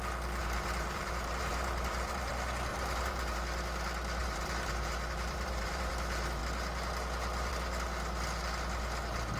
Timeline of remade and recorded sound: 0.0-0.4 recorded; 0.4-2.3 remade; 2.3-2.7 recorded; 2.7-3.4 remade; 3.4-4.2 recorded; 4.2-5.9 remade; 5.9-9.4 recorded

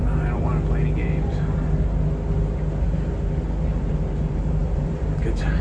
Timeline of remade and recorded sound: 0.0-0.5 remade; 0.5-3.8 recorded; 3.8-5.6 remade

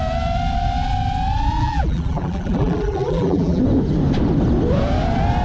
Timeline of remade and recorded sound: 0.0-1.6 recorded; 1.6-3.6 remade; 3.6-5.4 recorded